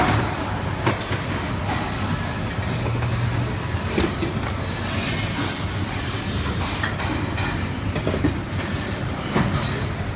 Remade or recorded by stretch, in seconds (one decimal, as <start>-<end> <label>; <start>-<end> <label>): 0.0-10.2 recorded